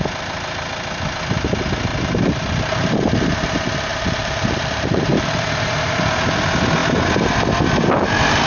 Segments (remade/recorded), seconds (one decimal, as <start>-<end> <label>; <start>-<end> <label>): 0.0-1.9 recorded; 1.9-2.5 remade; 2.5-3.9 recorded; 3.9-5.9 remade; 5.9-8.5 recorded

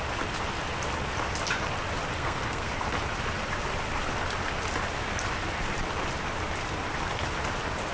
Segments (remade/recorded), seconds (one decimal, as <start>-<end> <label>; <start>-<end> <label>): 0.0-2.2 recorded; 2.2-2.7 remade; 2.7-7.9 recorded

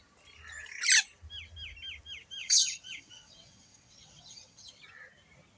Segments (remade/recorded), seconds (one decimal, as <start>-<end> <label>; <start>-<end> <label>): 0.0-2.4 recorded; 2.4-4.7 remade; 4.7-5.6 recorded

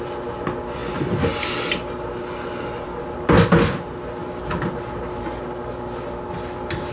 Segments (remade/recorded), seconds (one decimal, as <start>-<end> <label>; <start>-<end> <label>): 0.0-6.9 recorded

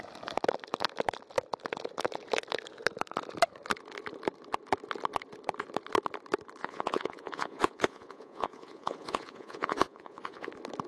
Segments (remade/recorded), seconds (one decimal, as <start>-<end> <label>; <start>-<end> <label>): 0.0-6.6 recorded; 6.6-10.5 remade; 10.5-10.9 recorded

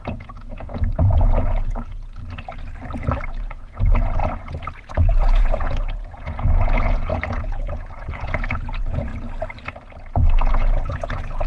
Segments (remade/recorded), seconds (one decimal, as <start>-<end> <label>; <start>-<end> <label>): 0.0-2.2 remade; 2.2-3.3 recorded; 3.3-4.2 remade; 4.2-4.7 recorded; 4.7-9.1 remade; 9.1-10.5 recorded; 10.5-11.5 remade

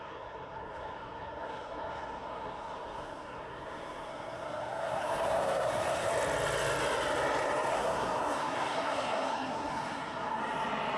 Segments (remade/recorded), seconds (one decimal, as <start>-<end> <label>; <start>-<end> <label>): 0.0-6.1 remade; 6.1-7.7 recorded; 7.7-10.4 remade; 10.4-11.0 recorded